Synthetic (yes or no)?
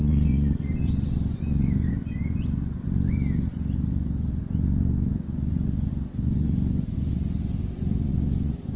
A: yes